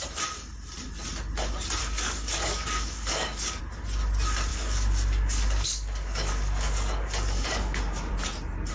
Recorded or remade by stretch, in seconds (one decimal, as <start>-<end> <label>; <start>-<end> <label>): 0.0-1.8 recorded; 1.8-3.6 remade; 3.6-4.5 recorded; 4.5-8.1 remade; 8.1-8.7 recorded